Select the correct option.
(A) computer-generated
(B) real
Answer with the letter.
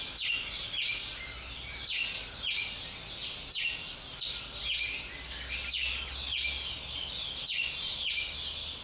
B